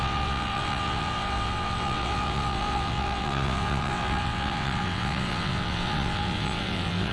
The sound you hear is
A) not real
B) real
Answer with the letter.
A